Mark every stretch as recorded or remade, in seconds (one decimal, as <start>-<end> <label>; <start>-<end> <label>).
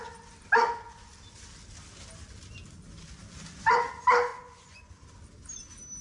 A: 0.0-4.3 recorded; 4.3-4.9 remade; 4.9-6.0 recorded